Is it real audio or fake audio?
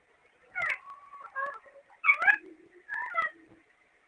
fake